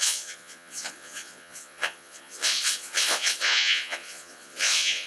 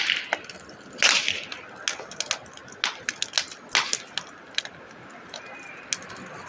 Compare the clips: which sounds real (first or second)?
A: second